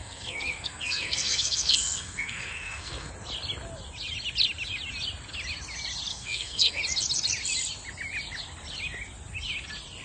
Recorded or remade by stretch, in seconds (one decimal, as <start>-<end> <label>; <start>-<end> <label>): 0.0-3.1 remade; 3.1-6.1 recorded; 6.1-6.8 remade; 6.8-10.0 recorded